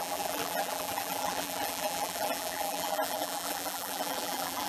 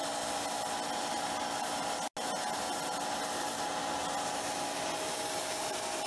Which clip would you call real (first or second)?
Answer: second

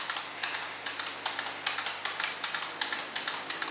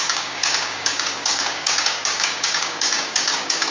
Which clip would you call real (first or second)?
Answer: first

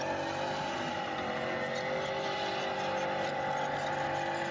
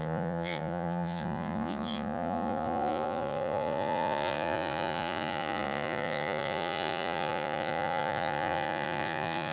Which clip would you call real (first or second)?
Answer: first